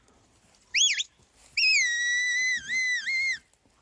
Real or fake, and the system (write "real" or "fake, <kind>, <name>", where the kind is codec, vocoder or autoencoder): real